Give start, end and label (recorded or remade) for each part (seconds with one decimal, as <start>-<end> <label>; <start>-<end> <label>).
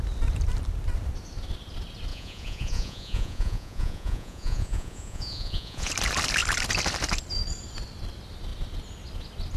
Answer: 0.0-2.1 recorded; 2.1-5.9 remade; 5.9-9.6 recorded